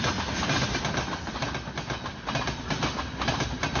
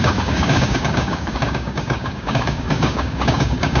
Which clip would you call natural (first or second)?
first